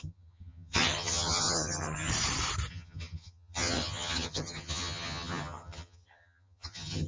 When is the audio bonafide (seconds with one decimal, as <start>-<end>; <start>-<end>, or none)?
2.1-2.7